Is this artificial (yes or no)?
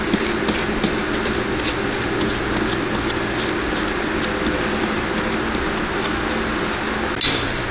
no